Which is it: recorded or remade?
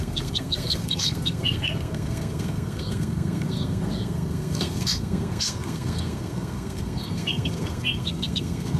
remade